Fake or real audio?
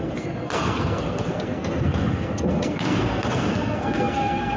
fake